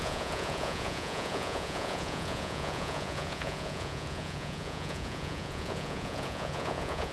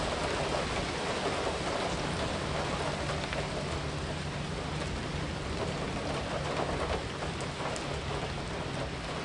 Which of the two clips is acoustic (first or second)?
second